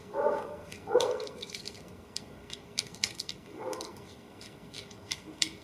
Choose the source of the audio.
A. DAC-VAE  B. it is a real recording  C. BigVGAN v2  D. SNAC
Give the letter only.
D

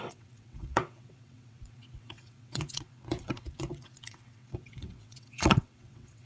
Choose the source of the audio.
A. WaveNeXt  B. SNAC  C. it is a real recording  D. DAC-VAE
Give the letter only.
A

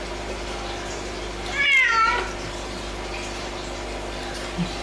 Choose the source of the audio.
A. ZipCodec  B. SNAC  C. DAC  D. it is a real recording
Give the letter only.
D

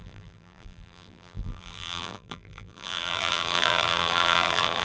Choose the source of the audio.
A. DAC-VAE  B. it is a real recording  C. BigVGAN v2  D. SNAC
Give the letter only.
C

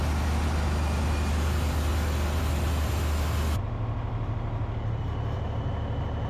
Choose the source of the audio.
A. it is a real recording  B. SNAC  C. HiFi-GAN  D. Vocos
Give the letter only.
A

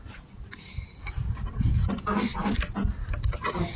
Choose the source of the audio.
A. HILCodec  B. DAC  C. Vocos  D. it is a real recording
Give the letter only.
D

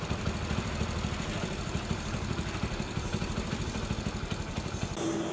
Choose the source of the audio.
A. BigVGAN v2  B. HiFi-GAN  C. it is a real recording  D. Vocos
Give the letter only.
A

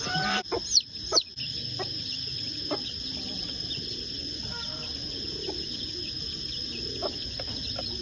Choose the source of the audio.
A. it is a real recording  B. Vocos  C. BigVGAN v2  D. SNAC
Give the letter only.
A